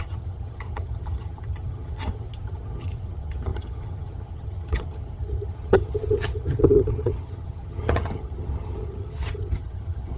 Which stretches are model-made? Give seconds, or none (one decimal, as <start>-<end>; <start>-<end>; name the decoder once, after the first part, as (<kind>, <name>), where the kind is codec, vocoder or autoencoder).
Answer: 0.0-10.2 (vocoder, HiFi-GAN)